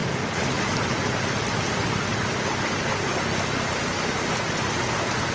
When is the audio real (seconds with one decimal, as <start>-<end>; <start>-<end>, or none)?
1.6-5.3